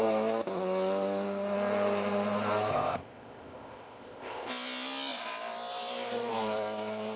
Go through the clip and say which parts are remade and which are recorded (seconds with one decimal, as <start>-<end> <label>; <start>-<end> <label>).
0.0-2.7 recorded; 2.7-4.5 remade; 4.5-7.2 recorded